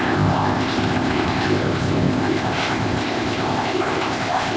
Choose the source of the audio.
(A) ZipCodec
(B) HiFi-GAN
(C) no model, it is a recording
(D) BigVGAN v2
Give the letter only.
A